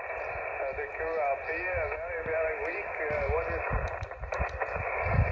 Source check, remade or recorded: recorded